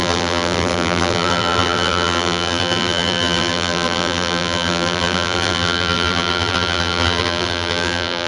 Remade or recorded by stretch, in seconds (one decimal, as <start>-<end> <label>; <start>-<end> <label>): 0.0-8.3 remade

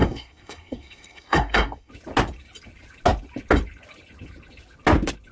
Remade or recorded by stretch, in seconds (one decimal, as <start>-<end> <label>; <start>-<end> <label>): 0.0-1.9 remade; 1.9-5.3 recorded

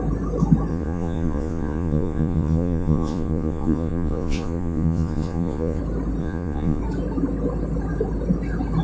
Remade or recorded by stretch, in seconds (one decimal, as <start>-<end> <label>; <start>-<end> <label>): 0.0-0.7 recorded; 0.7-5.8 remade; 5.8-6.2 recorded; 6.2-6.8 remade; 6.8-8.8 recorded

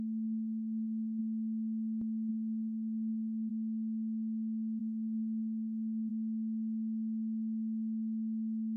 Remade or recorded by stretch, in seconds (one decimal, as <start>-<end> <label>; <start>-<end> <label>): 0.0-1.2 remade; 1.2-2.3 recorded; 2.3-3.5 remade; 3.5-4.8 recorded; 4.8-6.1 remade; 6.1-8.8 recorded

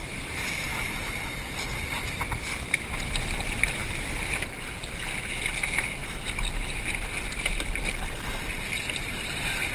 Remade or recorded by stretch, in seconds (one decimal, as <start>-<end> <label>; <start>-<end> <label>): 0.0-0.7 recorded; 0.7-1.4 remade; 1.4-9.7 recorded